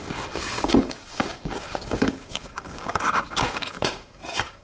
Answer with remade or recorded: remade